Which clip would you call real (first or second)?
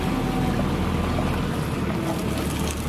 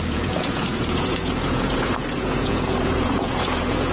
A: first